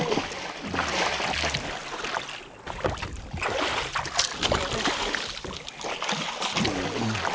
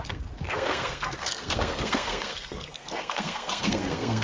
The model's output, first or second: second